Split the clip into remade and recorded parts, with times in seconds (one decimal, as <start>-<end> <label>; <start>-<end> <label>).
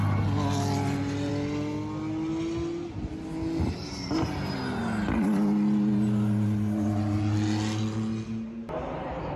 0.0-9.4 recorded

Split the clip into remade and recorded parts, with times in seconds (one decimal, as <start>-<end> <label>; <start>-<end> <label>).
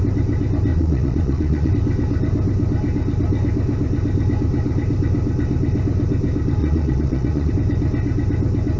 0.0-0.7 recorded; 0.7-1.7 remade; 1.7-6.6 recorded; 6.6-7.5 remade; 7.5-8.8 recorded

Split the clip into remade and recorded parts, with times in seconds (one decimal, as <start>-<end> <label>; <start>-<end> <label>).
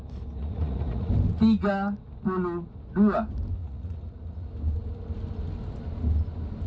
0.0-0.4 recorded; 0.4-1.1 remade; 1.1-3.6 recorded; 3.6-4.5 remade; 4.5-6.7 recorded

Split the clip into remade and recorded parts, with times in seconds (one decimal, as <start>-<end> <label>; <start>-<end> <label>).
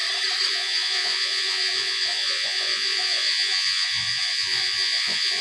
0.0-0.5 recorded; 0.5-5.4 remade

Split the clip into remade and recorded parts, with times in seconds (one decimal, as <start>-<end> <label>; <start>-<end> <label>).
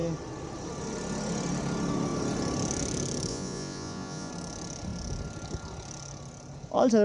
0.0-3.3 recorded; 3.3-4.3 remade; 4.3-7.0 recorded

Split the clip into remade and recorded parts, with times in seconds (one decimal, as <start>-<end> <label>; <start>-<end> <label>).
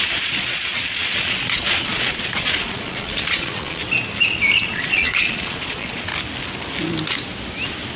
0.0-3.8 remade; 3.8-4.6 recorded; 4.6-6.1 remade; 6.1-8.0 recorded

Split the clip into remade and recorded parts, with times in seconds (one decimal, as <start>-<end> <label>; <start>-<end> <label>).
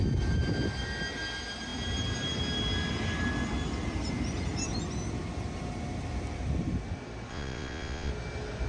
0.0-7.3 recorded; 7.3-8.1 remade; 8.1-8.7 recorded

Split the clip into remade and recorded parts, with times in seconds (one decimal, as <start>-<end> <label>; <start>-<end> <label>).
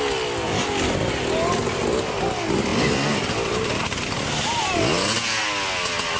0.0-6.2 recorded